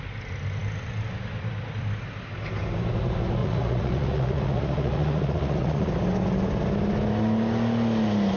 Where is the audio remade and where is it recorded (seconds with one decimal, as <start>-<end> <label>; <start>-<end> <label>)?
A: 0.0-3.4 recorded; 3.4-5.9 remade; 5.9-8.4 recorded